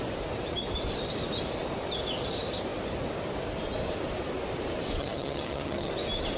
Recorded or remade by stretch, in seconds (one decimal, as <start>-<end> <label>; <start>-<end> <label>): 0.0-5.0 recorded; 5.0-5.9 remade; 5.9-6.4 recorded